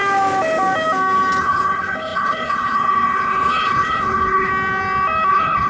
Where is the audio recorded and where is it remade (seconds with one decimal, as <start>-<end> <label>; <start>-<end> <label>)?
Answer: 0.0-1.4 recorded; 1.4-4.5 remade; 4.5-5.3 recorded; 5.3-5.7 remade